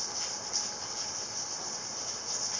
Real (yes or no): yes